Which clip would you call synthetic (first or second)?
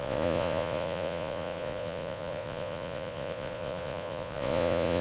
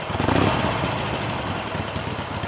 first